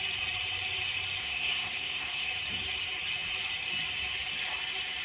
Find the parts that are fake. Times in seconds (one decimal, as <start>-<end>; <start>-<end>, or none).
1.2-2.3